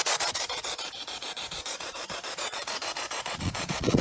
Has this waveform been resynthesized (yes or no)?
yes